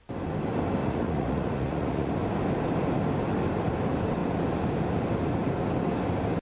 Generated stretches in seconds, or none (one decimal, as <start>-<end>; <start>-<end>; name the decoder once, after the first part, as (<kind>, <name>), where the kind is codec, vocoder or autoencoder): 0.8-2.1 (vocoder, Vocos)